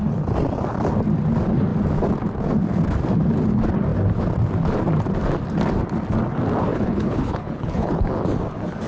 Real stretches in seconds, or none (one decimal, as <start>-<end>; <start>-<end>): 0.0-6.7; 8.1-8.9